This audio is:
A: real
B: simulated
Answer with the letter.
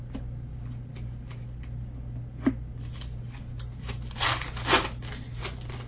A